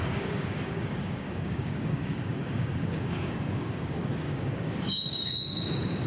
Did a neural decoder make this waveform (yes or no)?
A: yes